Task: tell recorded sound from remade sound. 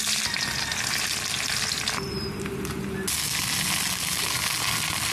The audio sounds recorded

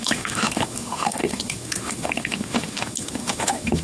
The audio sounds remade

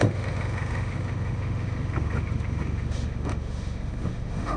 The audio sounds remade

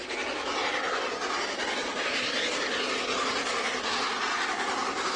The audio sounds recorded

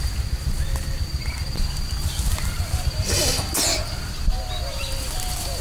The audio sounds recorded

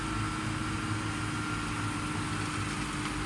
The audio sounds recorded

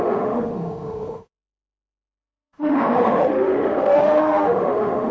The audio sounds remade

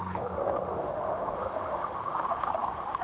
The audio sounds remade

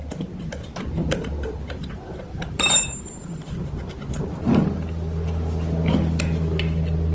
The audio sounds recorded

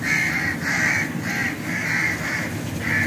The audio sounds recorded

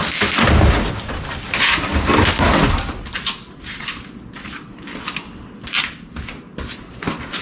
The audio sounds recorded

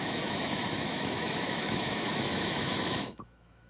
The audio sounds remade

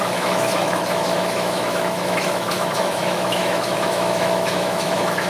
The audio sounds remade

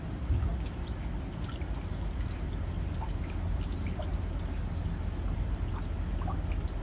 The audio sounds recorded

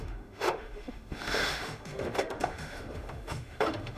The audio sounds remade